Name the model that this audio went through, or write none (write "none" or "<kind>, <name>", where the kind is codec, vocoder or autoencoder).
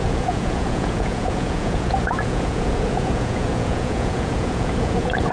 vocoder, Vocos